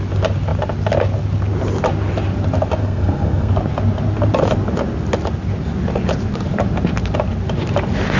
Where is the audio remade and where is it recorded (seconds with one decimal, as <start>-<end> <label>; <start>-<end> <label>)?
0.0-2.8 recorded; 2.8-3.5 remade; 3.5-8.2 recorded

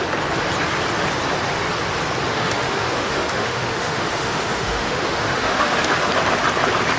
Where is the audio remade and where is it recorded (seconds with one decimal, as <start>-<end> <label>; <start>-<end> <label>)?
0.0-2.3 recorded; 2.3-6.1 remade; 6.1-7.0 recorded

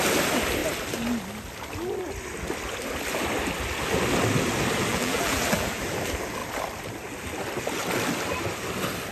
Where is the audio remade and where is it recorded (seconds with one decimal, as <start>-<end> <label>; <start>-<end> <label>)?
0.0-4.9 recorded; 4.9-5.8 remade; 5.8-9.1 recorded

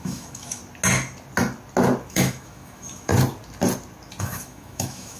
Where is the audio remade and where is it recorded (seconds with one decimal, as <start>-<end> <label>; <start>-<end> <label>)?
0.0-0.6 remade; 0.6-2.1 recorded; 2.1-3.1 remade; 3.1-4.2 recorded; 4.2-5.2 remade

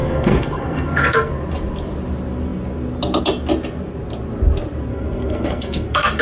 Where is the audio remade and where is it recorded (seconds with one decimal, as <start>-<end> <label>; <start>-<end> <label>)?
0.0-1.3 remade; 1.3-4.9 recorded; 4.9-6.2 remade

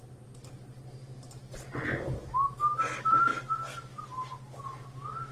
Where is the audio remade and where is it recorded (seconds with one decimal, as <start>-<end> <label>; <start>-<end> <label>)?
0.0-5.3 recorded